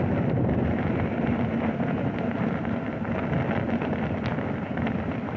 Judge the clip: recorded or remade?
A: recorded